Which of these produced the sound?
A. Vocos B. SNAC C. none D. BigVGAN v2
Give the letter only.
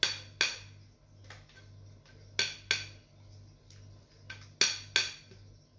C